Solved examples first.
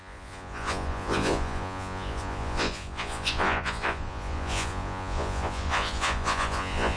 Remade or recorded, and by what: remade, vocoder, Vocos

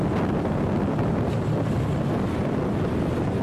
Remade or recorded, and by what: recorded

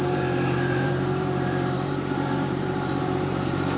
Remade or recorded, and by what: remade, vocoder, BigVGAN v2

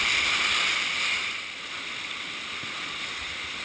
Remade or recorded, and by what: recorded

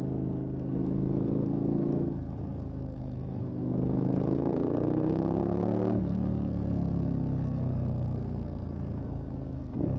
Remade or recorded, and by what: remade, codec, SNAC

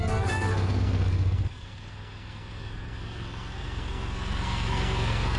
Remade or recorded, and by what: remade, codec, SNAC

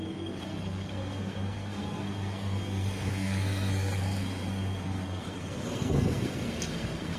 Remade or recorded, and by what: remade, codec, SNAC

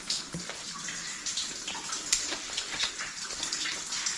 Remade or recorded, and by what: recorded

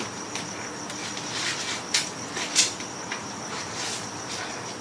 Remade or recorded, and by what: recorded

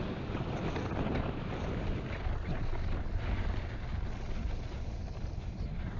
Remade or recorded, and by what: recorded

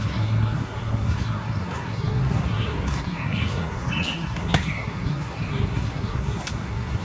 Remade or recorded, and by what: remade, codec, SNAC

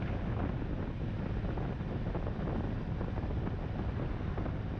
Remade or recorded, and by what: recorded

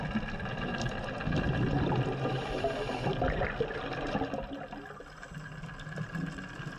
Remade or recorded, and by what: recorded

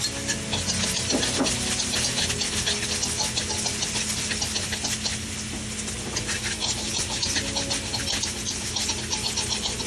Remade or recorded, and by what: recorded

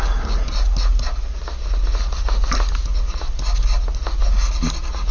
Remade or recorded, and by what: recorded